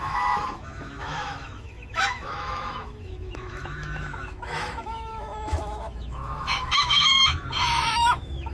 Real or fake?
fake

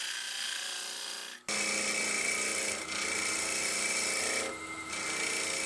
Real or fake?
real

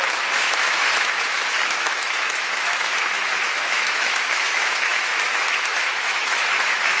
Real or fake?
fake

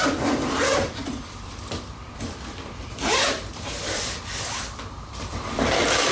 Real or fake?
fake